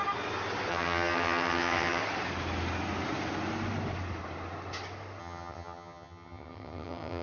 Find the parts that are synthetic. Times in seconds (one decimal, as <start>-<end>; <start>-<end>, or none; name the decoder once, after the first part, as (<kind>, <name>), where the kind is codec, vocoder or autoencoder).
0.7-2.0 (vocoder, HiFi-GAN); 5.2-7.2